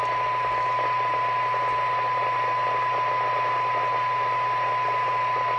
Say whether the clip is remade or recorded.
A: recorded